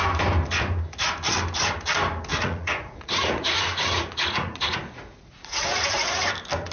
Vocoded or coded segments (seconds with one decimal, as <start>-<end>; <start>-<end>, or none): 2.3-6.3